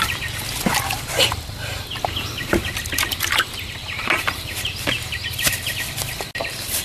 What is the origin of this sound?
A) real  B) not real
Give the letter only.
A